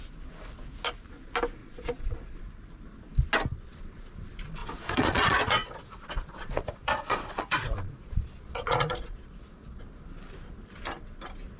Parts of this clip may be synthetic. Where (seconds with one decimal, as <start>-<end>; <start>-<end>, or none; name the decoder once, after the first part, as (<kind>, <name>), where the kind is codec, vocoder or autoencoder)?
1.6-2.4 (vocoder, Vocos); 4.6-9.8